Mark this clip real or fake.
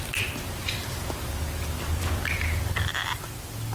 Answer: real